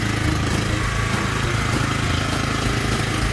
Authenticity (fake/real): real